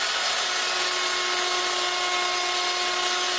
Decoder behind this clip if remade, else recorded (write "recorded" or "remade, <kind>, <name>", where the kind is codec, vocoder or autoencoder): recorded